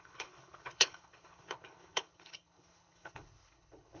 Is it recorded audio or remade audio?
remade